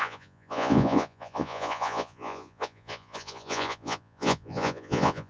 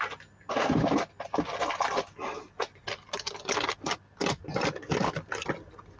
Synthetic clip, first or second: first